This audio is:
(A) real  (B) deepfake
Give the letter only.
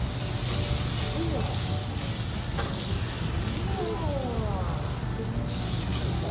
A